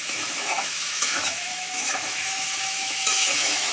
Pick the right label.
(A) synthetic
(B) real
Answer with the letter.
A